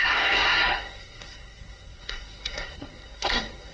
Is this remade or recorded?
remade